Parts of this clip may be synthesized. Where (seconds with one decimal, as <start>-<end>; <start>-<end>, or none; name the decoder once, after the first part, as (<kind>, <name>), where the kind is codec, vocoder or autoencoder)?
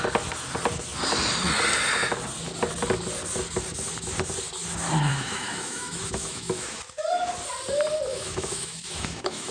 5.1-6.8 (autoencoder, DAC-VAE); 8.1-9.5